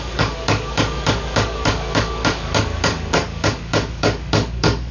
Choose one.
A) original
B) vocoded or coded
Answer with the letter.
B